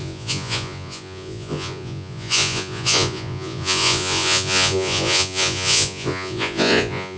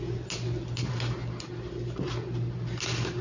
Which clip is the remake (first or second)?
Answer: first